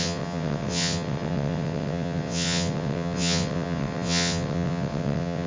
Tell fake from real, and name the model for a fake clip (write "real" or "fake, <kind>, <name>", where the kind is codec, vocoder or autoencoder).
fake, vocoder, WaveNeXt